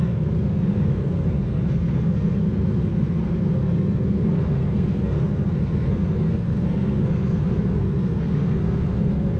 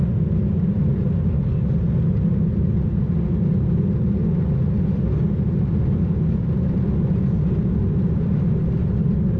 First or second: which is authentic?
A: second